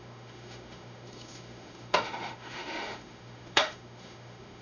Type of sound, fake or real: fake